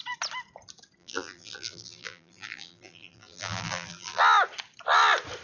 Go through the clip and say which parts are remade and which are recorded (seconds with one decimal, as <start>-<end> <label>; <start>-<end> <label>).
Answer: 0.0-1.0 recorded; 1.0-4.2 remade; 4.2-5.4 recorded